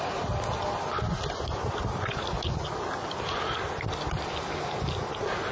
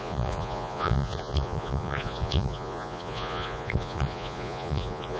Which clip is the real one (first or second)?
first